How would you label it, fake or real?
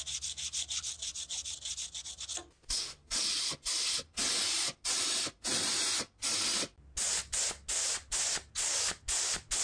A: real